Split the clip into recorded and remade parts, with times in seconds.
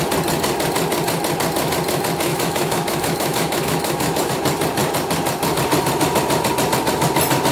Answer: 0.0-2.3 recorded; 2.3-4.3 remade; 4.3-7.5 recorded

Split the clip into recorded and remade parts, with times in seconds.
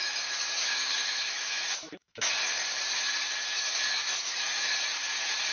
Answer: 0.0-2.3 remade; 2.3-3.5 recorded; 3.5-4.7 remade; 4.7-5.5 recorded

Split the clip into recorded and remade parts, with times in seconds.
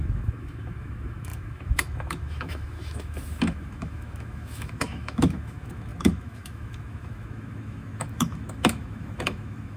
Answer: 0.0-9.8 remade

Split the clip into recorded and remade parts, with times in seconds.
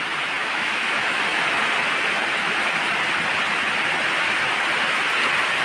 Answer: 0.0-0.4 recorded; 0.4-1.2 remade; 1.2-5.6 recorded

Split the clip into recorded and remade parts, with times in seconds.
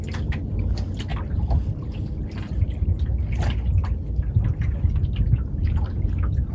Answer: 0.0-6.5 recorded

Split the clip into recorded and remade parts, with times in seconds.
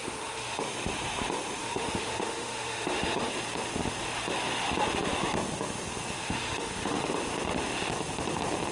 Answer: 0.0-0.6 remade; 0.6-1.6 recorded; 1.6-3.3 remade; 3.3-6.2 recorded; 6.2-7.1 remade; 7.1-8.7 recorded